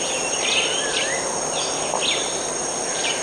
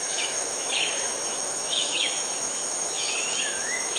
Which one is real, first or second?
first